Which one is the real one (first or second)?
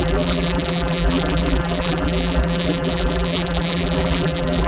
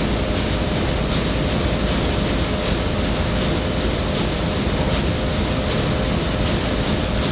second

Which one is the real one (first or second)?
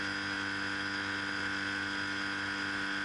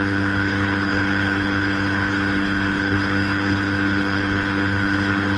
first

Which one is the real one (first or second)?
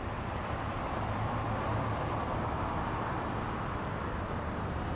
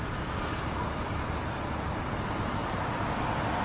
first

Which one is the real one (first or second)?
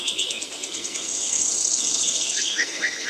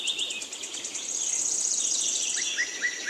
second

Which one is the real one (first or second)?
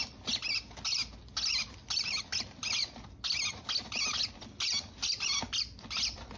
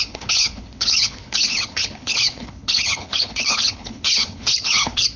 first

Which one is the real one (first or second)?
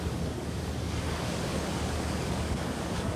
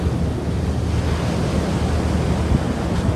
second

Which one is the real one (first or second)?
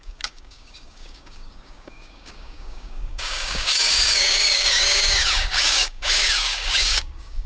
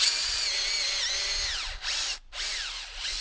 second